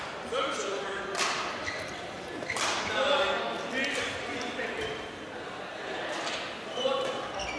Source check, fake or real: real